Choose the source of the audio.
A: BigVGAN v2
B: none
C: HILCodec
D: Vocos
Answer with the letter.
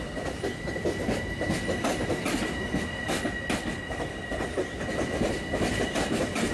B